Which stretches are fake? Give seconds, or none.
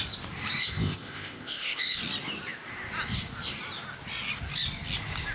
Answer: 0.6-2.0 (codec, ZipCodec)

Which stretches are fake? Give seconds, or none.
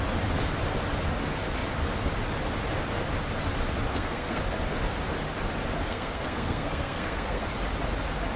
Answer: 3.9-4.4 (codec, SNAC); 5.9-7.5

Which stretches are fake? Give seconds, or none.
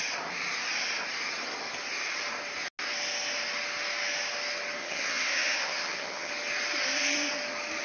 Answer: 4.8-6.3 (vocoder, HiFi-GAN)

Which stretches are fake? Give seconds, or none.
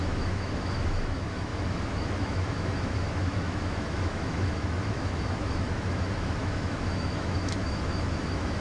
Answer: 0.0-8.6 (autoencoder, DAC-VAE)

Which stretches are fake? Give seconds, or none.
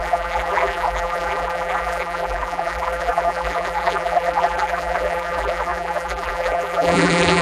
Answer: 0.0-7.4 (vocoder, BigVGAN v2)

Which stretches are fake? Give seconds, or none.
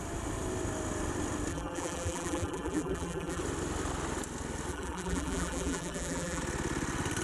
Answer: 1.5-3.4 (vocoder, BigVGAN v2); 4.7-6.4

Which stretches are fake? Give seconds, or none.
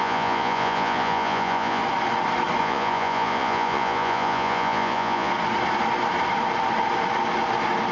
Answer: 0.0-1.8 (vocoder, Vocos); 2.6-5.3